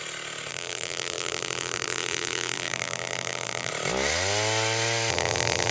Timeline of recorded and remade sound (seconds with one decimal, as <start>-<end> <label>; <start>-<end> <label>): 0.0-0.5 recorded; 0.5-3.7 remade; 3.7-5.1 recorded; 5.1-5.7 remade